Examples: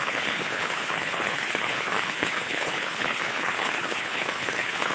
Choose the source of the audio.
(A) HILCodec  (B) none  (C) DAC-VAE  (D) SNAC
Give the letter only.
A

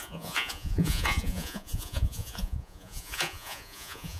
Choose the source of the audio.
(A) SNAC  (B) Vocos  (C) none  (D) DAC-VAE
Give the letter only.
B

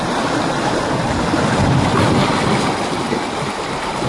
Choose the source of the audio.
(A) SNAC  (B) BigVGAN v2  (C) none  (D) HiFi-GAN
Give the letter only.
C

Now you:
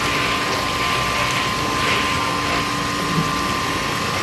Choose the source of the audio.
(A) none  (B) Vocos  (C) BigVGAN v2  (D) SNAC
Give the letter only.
A